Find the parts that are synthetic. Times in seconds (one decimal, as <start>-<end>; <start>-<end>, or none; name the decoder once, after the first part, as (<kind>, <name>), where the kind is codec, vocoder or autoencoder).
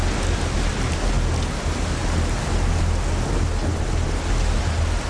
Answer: none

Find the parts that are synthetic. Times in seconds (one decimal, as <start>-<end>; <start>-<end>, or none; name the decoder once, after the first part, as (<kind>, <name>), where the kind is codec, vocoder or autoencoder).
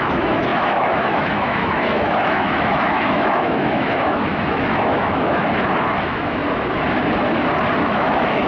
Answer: 0.0-5.4 (autoencoder, DAC-VAE); 6.0-6.4; 7.8-8.5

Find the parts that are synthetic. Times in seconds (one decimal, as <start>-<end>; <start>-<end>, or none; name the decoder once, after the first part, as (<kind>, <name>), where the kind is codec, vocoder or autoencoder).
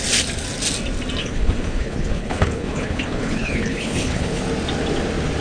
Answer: 1.2-4.4 (codec, HILCodec)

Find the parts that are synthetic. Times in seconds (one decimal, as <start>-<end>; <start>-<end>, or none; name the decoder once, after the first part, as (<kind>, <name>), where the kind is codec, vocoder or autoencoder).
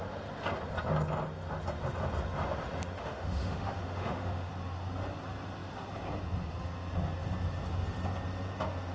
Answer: 3.0-4.5 (autoencoder, DAC-VAE)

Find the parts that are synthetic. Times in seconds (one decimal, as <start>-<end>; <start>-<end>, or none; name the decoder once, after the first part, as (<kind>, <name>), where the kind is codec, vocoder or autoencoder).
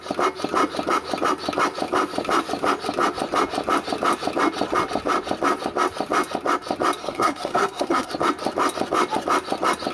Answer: 7.0-8.1 (codec, SNAC)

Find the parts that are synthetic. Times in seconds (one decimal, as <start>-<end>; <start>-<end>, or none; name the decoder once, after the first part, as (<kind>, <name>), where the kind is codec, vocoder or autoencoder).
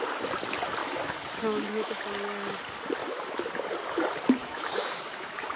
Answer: 0.8-2.0 (autoencoder, DAC-VAE); 3.0-3.5; 4.4-5.6